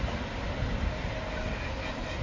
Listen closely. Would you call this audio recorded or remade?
remade